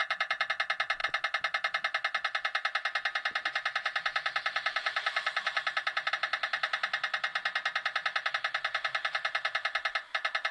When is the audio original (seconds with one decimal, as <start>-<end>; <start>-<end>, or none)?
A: 0.5-10.5